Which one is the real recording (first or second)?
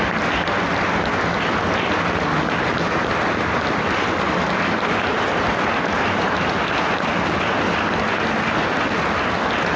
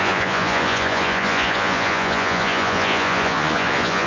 first